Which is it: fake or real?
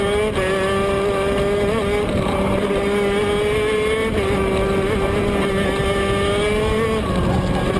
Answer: real